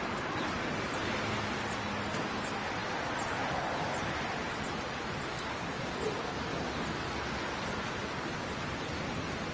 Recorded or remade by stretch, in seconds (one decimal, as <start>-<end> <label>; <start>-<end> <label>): 0.0-5.3 recorded; 5.3-5.9 remade; 5.9-9.5 recorded